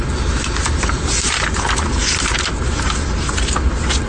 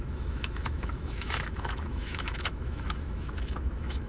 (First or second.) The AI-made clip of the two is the second